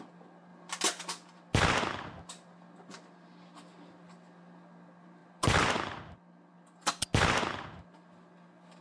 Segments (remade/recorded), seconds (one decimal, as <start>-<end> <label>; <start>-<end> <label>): 0.0-8.8 recorded